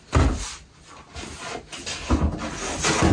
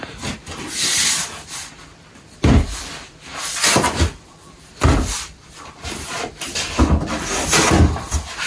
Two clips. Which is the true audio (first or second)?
first